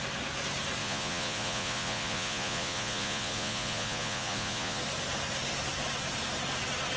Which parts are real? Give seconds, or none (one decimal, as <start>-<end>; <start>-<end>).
0.0-0.8; 4.8-7.0